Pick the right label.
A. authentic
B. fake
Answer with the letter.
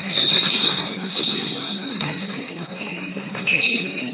B